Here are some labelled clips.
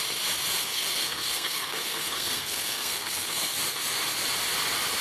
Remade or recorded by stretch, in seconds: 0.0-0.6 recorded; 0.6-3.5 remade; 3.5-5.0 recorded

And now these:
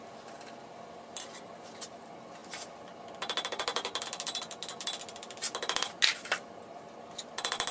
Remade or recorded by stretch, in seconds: 0.0-7.7 recorded

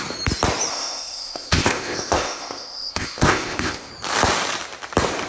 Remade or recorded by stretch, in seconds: 0.0-0.7 recorded; 0.7-3.9 remade; 3.9-5.3 recorded

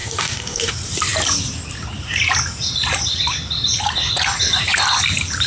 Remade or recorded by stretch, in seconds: 0.0-0.7 remade; 0.7-5.5 recorded

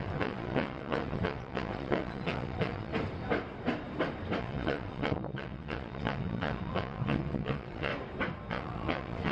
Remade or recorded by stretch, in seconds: 0.0-2.9 remade; 2.9-4.4 recorded; 4.4-7.9 remade; 7.9-8.5 recorded; 8.5-9.3 remade

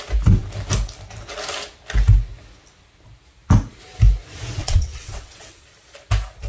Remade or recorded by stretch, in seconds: 0.0-4.6 recorded; 4.6-5.6 remade; 5.6-6.5 recorded

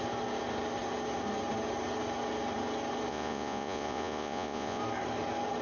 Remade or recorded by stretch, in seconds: 0.0-3.1 recorded; 3.1-4.8 remade; 4.8-5.6 recorded